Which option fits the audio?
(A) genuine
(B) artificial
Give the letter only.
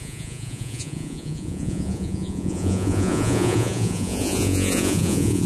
B